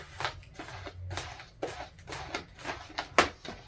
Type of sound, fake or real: real